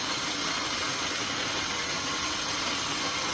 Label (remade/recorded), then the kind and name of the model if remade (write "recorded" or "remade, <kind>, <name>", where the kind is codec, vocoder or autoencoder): remade, vocoder, WaveNeXt